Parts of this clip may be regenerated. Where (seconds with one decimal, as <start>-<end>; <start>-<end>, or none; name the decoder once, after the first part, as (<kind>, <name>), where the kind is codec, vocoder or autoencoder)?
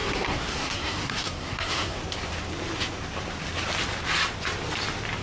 0.0-2.0 (codec, SNAC)